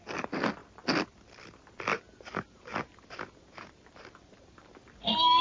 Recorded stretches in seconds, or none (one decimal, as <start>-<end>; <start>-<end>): 0.0-1.9